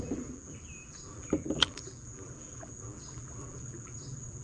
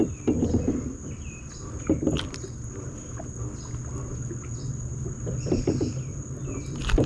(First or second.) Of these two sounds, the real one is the second